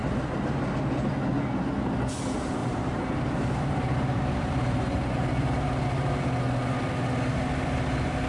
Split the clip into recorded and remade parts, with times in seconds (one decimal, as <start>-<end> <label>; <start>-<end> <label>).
0.0-0.6 remade; 0.6-2.6 recorded; 2.6-5.8 remade; 5.8-8.3 recorded